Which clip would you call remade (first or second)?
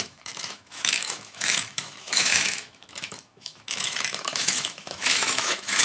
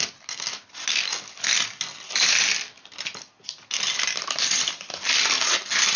first